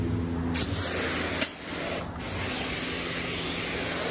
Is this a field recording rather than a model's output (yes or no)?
yes